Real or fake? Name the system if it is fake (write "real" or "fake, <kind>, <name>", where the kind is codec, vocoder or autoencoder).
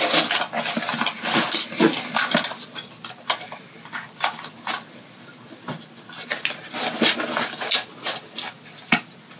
real